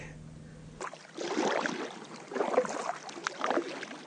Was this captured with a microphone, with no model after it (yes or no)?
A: yes